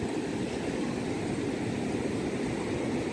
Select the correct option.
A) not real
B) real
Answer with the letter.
B